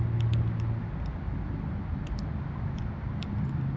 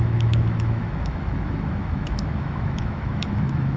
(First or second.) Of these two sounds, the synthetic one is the second